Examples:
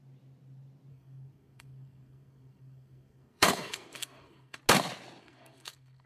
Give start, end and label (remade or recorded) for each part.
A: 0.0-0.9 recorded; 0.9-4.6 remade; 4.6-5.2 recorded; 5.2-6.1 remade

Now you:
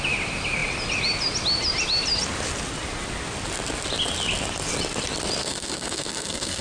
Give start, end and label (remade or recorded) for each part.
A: 0.0-5.4 recorded; 5.4-6.6 remade

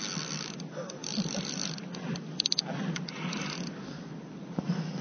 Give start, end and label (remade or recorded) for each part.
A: 0.0-5.0 recorded

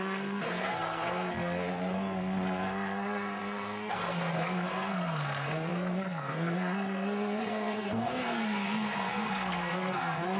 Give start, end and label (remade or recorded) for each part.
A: 0.0-10.4 remade